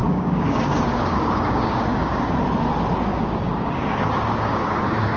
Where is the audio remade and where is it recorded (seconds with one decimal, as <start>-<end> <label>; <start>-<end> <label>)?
0.0-2.2 remade; 2.2-3.1 recorded; 3.1-5.2 remade